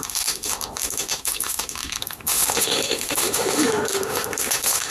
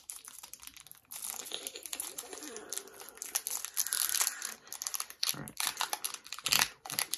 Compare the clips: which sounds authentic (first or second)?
second